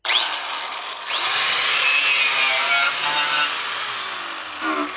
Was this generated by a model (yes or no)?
no